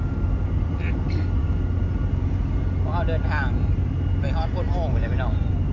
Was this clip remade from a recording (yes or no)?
no